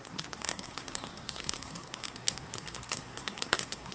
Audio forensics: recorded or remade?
remade